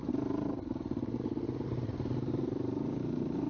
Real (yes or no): yes